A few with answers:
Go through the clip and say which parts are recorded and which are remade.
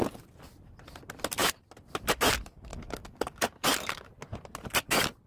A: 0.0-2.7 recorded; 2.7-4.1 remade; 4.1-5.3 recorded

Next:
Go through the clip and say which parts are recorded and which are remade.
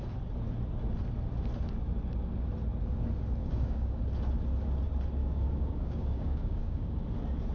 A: 0.0-3.4 recorded; 3.4-4.0 remade; 4.0-5.2 recorded; 5.2-7.0 remade; 7.0-7.5 recorded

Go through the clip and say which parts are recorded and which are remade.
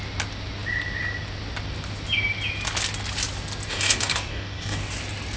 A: 0.0-3.7 recorded; 3.7-4.9 remade; 4.9-5.4 recorded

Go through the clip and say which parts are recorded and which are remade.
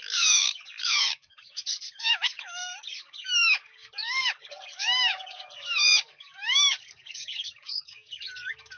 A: 0.0-8.8 remade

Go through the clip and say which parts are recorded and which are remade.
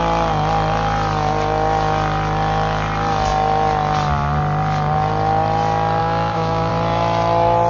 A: 0.0-6.0 recorded; 6.0-6.7 remade; 6.7-7.7 recorded